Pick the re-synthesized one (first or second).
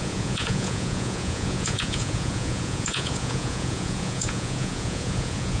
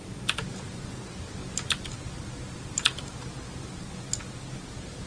first